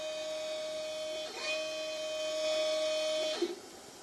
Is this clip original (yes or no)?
yes